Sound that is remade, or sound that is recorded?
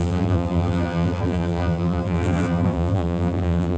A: remade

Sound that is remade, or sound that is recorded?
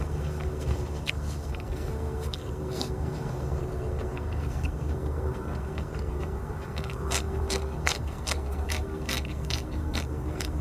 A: remade